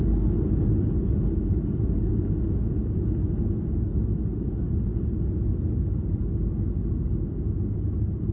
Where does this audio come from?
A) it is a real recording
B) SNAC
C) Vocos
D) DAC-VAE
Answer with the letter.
A